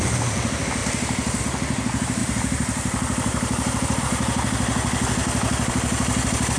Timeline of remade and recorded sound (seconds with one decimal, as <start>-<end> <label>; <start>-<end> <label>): 0.0-0.8 recorded; 0.8-1.4 remade; 1.4-2.2 recorded; 2.2-4.0 remade; 4.0-6.6 recorded